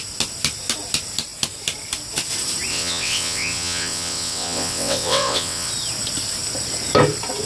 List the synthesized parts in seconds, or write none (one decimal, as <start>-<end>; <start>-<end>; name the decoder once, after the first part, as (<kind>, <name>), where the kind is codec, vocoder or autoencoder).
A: 2.7-5.7 (vocoder, WaveNeXt)